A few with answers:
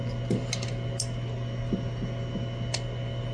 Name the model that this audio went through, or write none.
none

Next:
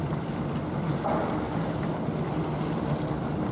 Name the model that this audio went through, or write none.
none